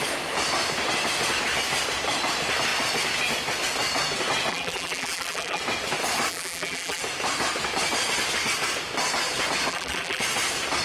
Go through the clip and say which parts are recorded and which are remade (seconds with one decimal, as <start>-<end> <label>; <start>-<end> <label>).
0.0-4.5 recorded; 4.5-5.6 remade; 5.6-6.3 recorded; 6.3-7.0 remade; 7.0-9.7 recorded; 9.7-10.2 remade; 10.2-10.8 recorded